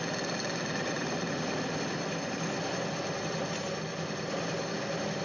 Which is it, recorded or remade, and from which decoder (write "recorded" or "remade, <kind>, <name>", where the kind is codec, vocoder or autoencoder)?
recorded